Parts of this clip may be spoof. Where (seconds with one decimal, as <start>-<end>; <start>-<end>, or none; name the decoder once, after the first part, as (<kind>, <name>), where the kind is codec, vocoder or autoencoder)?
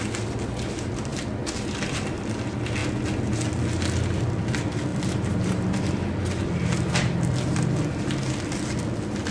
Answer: 4.9-6.9 (vocoder, BigVGAN v2)